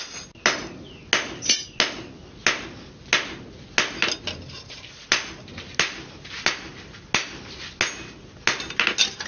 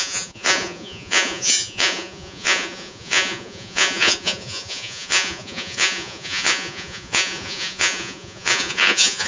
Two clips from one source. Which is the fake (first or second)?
second